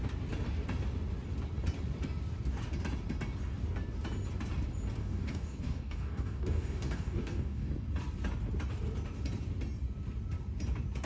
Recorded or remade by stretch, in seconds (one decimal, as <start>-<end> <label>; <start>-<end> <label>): 0.0-5.0 recorded; 5.0-7.7 remade; 7.7-11.1 recorded